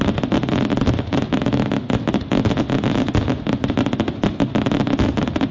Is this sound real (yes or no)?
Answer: yes